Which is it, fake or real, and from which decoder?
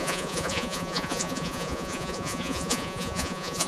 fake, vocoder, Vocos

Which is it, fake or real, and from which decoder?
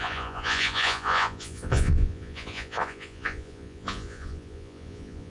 fake, vocoder, Vocos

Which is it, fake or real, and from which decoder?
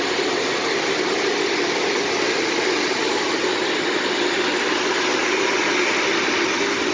real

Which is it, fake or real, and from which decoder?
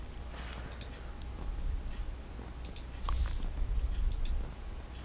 real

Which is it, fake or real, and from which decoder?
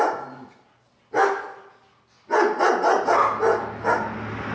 real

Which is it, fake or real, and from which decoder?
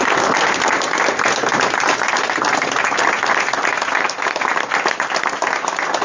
real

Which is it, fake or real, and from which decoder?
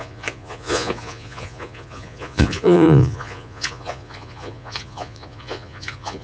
fake, vocoder, Vocos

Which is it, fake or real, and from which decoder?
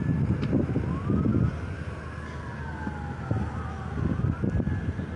real